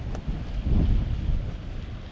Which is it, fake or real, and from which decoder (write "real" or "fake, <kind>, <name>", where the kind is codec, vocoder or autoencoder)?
real